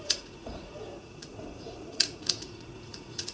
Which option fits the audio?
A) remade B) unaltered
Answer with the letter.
A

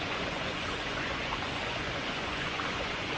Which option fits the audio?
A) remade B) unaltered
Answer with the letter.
A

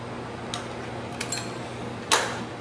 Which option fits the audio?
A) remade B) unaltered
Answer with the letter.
B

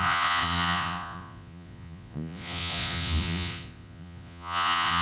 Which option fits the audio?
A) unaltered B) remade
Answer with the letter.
B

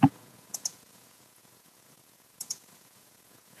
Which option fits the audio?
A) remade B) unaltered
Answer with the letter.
A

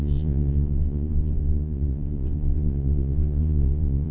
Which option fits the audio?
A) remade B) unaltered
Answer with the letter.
A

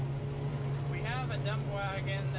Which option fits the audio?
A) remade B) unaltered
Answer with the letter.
B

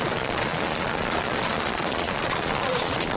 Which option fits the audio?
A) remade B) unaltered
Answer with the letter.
A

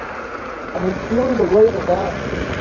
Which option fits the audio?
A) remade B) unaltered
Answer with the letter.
A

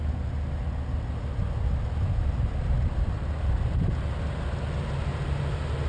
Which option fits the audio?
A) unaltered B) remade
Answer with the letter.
A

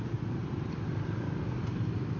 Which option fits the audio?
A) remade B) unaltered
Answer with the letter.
B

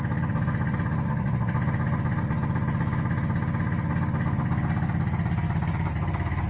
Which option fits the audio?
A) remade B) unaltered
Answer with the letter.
B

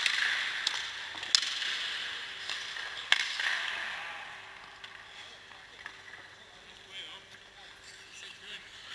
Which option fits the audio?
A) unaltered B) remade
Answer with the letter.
A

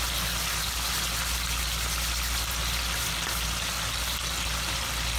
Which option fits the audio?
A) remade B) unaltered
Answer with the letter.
B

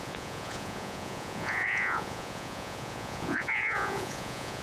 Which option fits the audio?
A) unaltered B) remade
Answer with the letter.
B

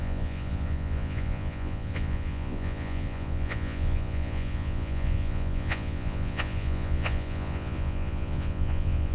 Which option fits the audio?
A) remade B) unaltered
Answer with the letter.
A